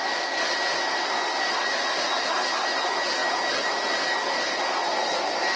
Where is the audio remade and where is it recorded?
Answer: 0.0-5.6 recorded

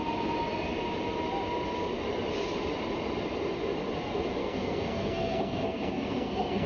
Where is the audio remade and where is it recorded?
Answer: 0.0-4.4 recorded; 4.4-6.7 remade

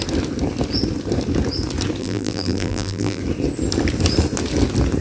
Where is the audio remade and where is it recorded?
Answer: 0.0-2.0 recorded; 2.0-3.2 remade; 3.2-5.0 recorded

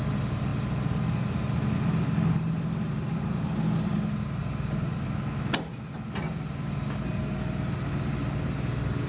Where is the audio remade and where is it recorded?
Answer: 0.0-9.1 recorded

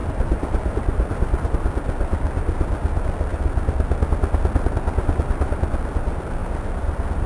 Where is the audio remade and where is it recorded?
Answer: 0.0-1.5 remade; 1.5-6.4 recorded; 6.4-7.3 remade